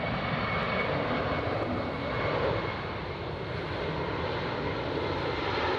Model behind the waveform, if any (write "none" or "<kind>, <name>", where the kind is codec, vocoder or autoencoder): none